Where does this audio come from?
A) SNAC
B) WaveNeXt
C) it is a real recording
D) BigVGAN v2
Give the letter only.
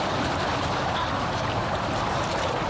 D